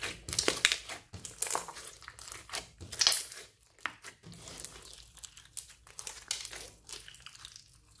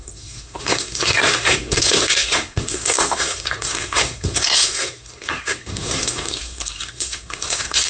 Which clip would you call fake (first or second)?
second